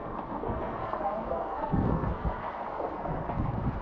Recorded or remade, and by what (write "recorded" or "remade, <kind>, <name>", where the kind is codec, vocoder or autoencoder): remade, codec, SNAC